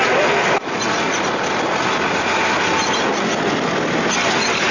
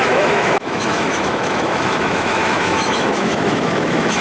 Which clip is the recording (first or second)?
first